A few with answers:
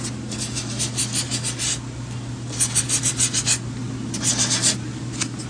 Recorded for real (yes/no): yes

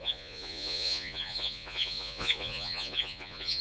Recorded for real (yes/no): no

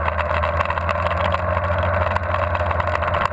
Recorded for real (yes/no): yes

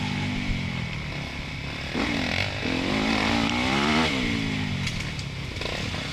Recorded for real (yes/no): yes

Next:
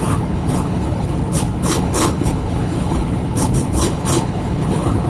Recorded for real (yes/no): no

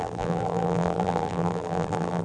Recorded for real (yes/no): no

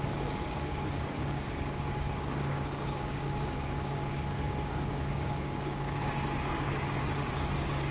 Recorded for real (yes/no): no